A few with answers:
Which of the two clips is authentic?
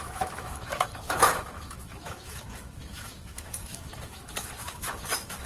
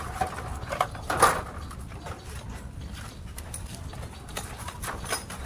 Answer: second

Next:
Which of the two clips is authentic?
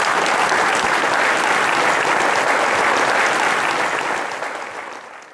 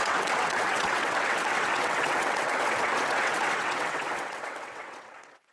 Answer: first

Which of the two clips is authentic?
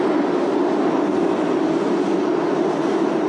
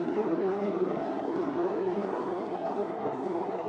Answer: first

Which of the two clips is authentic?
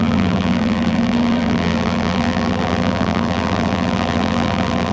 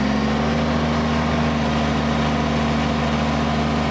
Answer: second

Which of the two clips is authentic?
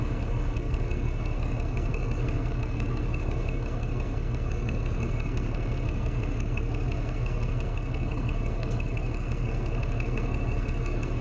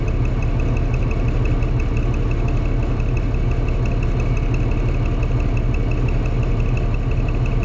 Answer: second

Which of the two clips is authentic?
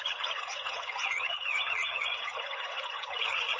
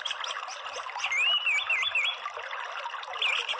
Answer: second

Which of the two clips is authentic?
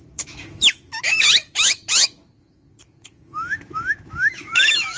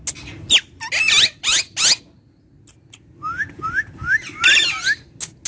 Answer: second